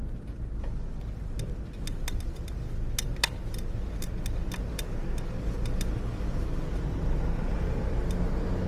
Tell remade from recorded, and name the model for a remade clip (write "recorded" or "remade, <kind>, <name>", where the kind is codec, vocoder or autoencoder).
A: recorded